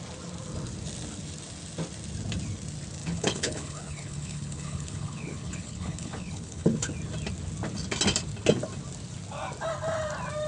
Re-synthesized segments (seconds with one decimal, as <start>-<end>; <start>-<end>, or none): 3.0-6.9